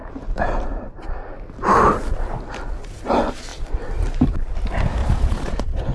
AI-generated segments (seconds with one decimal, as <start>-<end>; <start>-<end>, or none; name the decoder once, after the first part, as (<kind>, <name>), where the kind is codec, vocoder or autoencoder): 5.0-5.9 (vocoder, Vocos)